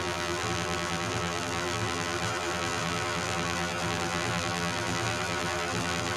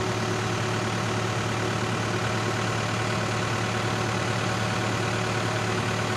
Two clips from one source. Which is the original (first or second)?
second